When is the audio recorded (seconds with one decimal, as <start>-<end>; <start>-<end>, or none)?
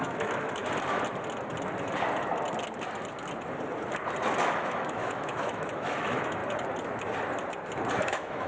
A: 0.6-4.4; 6.4-8.0